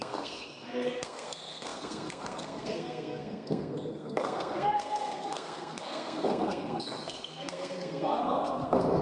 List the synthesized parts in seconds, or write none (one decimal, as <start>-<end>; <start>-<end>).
0.0-9.0

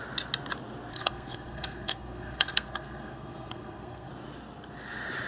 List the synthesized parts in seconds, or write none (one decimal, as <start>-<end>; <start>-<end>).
0.9-4.1

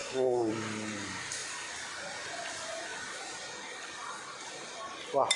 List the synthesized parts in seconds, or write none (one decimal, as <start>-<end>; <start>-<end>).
0.0-0.5

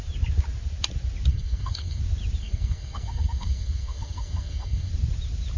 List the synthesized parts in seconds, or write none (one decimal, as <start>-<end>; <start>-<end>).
1.3-2.0; 2.4-4.9

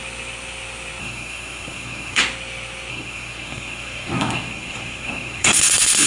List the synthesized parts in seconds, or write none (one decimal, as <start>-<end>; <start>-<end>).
1.0-2.2; 2.9-6.1